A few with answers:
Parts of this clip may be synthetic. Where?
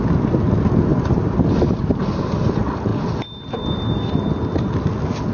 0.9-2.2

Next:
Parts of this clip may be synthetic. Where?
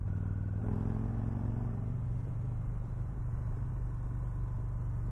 0.6-3.7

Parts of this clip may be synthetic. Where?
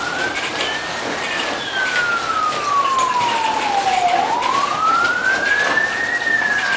0.0-0.5; 4.0-5.2; 6.2-6.8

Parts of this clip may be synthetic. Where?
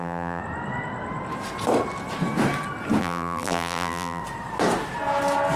0.0-0.4; 3.0-4.2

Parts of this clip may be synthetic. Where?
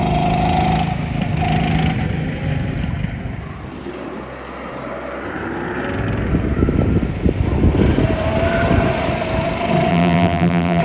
9.9-10.8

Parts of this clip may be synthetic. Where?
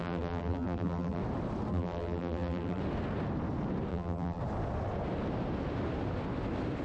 0.0-1.2; 1.7-2.8; 3.9-4.4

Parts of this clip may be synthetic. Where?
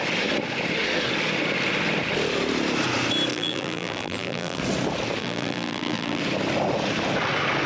3.3-4.6; 5.2-6.2